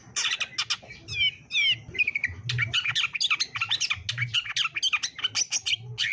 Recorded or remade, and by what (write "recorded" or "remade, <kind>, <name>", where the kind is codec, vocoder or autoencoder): recorded